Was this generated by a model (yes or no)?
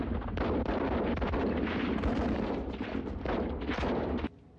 no